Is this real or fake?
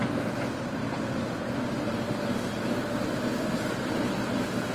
real